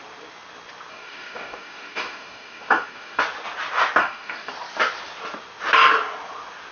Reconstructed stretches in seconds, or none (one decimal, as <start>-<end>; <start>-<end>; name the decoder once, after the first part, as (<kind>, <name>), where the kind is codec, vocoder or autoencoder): 0.9-3.2 (codec, DAC); 4.0-4.5